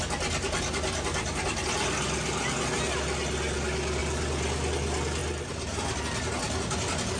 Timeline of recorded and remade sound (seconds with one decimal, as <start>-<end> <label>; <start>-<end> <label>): 0.0-7.2 recorded